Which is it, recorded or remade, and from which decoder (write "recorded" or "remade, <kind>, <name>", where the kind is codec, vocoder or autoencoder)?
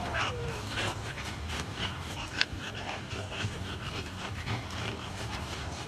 remade, codec, DAC